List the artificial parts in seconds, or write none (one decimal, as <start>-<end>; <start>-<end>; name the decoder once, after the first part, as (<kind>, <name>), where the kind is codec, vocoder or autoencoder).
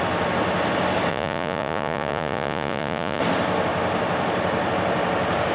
1.1-3.2 (vocoder, Vocos)